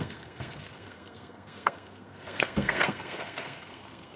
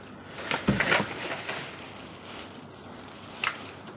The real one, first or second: second